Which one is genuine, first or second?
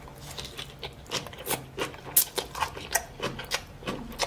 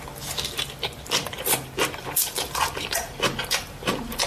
first